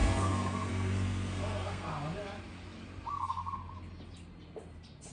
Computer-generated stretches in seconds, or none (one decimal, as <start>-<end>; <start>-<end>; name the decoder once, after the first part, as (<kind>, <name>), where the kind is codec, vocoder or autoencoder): 0.0-1.9 (codec, SNAC); 3.1-3.6